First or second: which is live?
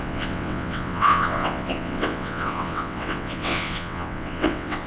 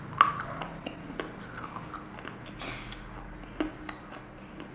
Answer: second